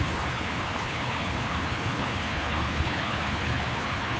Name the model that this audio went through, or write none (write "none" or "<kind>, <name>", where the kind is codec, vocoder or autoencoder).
codec, HILCodec